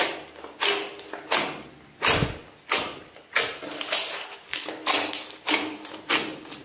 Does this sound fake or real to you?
real